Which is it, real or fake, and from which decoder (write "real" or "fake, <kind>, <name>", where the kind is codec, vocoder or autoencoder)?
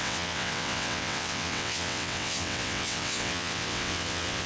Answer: fake, vocoder, WaveNeXt